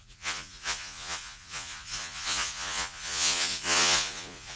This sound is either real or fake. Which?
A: fake